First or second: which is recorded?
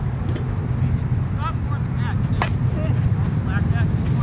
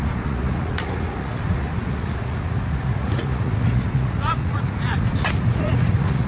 first